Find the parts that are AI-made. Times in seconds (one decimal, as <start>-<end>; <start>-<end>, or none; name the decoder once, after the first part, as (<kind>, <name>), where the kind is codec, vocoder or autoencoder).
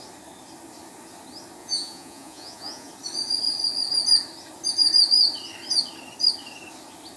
1.6-2.9 (vocoder, Vocos)